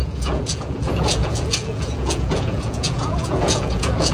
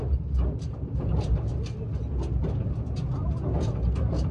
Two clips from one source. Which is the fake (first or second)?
first